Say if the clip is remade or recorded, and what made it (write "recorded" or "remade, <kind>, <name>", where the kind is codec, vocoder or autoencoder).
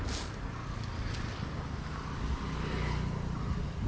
recorded